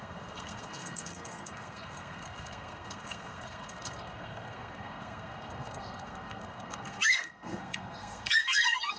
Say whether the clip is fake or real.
fake